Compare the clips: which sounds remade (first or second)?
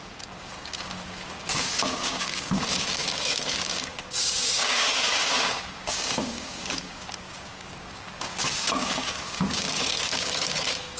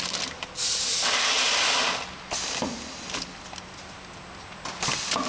first